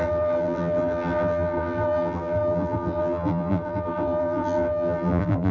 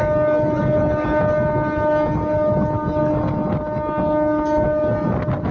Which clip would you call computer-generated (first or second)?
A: first